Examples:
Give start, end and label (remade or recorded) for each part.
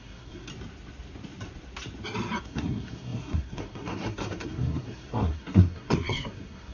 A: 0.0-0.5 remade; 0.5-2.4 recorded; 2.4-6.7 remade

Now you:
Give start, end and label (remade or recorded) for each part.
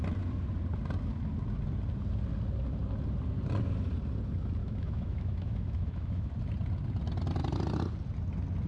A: 0.0-4.6 recorded; 4.6-6.3 remade; 6.3-8.7 recorded